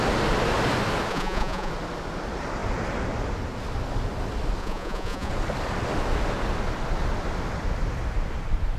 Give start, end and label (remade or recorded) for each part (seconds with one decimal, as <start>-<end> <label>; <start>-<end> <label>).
0.0-1.1 recorded; 1.1-1.7 remade; 1.7-4.6 recorded; 4.6-5.3 remade; 5.3-8.8 recorded